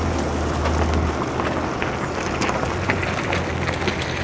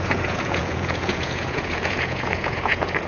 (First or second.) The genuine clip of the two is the first